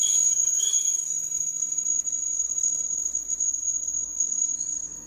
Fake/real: fake